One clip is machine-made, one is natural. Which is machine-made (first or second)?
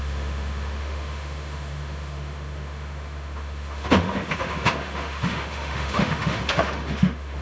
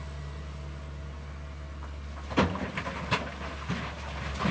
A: first